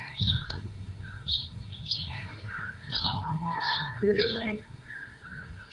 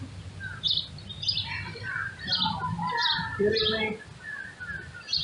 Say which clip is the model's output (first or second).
first